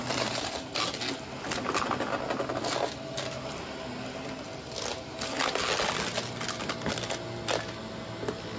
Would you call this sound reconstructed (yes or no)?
no